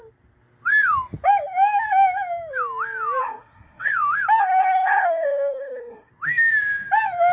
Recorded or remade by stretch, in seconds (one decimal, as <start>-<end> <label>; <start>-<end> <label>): 0.0-3.2 recorded; 3.2-3.9 remade; 3.9-4.4 recorded; 4.4-6.1 remade; 6.1-7.3 recorded